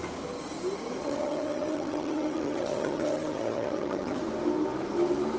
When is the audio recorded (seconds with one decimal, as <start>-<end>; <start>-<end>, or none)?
0.0-1.0; 4.2-5.4